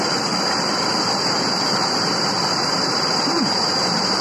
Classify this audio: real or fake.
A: real